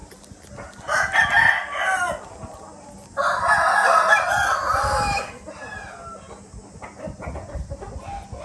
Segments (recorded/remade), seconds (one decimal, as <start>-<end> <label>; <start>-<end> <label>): 0.0-8.4 recorded